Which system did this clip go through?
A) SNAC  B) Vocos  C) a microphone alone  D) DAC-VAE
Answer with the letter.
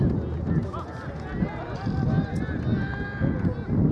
C